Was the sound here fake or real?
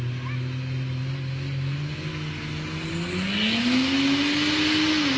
real